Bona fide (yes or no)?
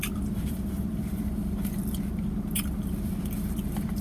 no